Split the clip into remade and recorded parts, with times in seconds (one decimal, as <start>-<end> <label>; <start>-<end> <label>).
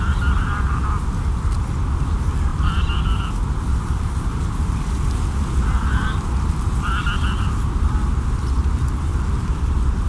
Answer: 0.0-2.5 recorded; 2.5-4.4 remade; 4.4-9.1 recorded; 9.1-10.1 remade